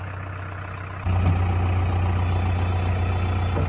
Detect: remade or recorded recorded